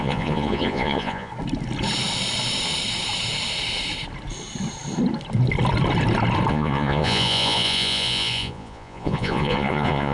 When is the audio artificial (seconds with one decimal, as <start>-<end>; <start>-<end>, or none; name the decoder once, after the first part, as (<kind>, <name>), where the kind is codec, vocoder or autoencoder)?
0.0-1.3 (vocoder, Vocos); 6.5-10.1